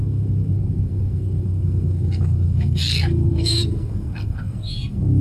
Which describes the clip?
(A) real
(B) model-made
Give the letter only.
B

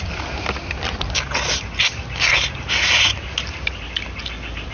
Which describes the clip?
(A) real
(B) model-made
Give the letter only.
A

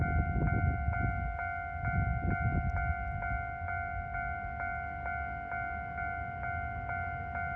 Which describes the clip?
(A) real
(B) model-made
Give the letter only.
A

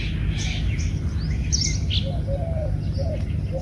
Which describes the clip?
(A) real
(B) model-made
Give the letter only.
A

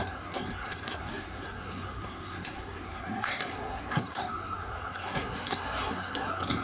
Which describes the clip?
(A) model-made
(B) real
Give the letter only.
A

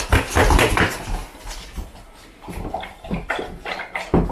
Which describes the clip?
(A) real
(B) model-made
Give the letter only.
A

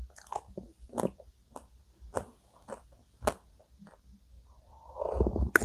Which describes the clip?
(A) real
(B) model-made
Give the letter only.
A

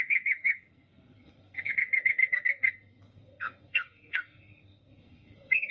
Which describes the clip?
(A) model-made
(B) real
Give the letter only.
A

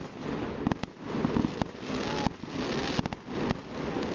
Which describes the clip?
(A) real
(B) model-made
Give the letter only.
A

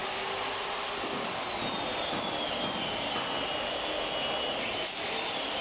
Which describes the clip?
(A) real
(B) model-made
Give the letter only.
A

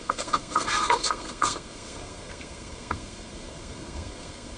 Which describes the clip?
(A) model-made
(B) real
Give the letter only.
A